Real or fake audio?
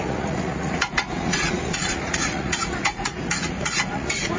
fake